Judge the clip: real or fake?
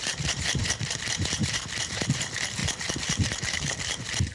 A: fake